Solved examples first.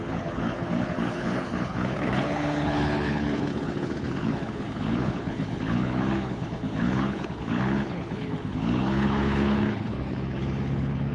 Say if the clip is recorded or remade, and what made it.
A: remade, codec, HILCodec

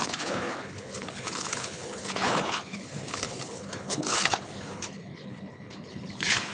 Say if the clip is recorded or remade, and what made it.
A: remade, codec, HILCodec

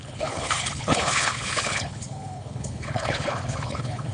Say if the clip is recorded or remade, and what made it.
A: remade, codec, HILCodec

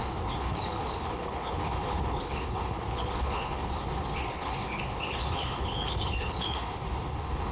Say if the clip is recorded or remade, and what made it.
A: remade, codec, HILCodec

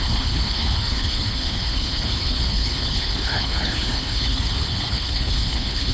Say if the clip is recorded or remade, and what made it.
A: remade, codec, HILCodec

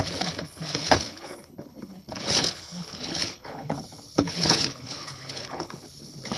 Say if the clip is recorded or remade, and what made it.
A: remade, codec, HILCodec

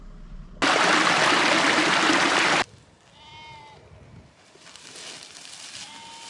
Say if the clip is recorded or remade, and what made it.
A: recorded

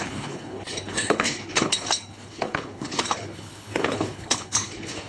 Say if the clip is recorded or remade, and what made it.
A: remade, codec, HILCodec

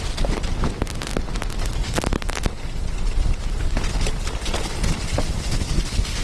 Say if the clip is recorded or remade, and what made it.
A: recorded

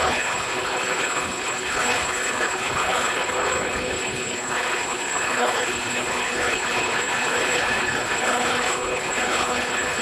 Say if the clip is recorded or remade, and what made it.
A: remade, codec, HILCodec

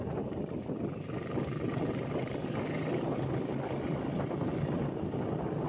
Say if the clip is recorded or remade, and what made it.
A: recorded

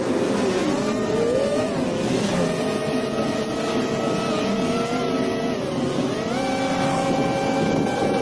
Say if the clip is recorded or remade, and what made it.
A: recorded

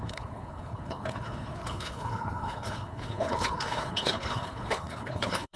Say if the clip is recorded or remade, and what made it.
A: remade, codec, HILCodec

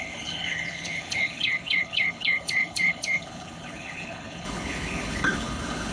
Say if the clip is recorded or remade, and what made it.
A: remade, codec, HILCodec